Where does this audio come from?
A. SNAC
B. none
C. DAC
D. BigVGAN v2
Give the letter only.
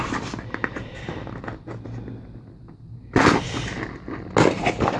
B